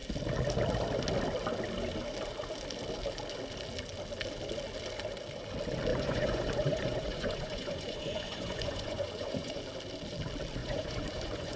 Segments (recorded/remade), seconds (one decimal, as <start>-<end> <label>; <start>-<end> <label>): 0.0-5.9 recorded; 5.9-9.6 remade; 9.6-10.6 recorded; 10.6-11.6 remade